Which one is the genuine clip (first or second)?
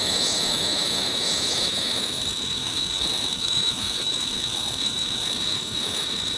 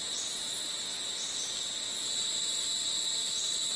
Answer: second